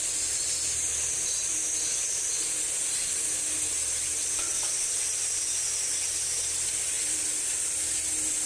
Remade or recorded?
recorded